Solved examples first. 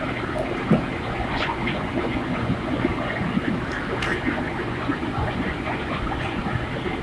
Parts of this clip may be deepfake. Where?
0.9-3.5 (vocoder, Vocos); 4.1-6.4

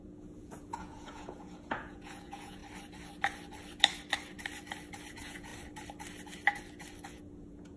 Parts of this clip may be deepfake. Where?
0.0-2.6 (vocoder, Vocos); 5.1-5.5; 7.1-7.8